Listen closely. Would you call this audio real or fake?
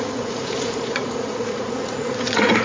fake